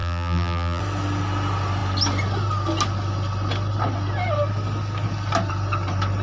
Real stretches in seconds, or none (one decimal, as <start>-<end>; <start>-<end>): 0.8-6.2